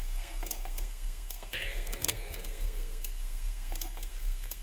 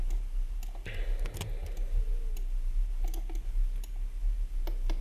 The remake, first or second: first